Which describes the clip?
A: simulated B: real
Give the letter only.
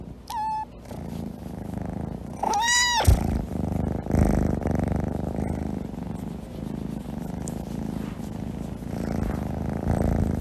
B